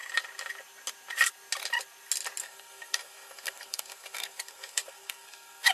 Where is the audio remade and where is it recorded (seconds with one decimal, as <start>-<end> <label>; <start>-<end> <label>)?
0.0-2.4 recorded; 2.4-5.7 remade